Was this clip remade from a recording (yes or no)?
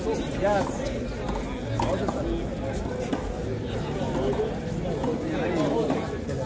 no